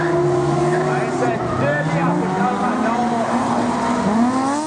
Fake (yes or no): no